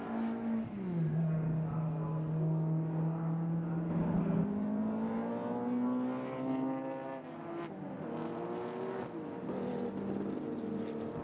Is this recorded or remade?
recorded